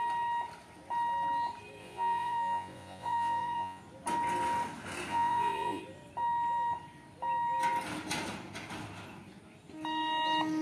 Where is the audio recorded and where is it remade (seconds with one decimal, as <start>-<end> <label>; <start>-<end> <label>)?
0.0-1.8 recorded; 1.8-3.8 remade; 3.8-5.1 recorded; 5.1-5.8 remade; 5.8-10.6 recorded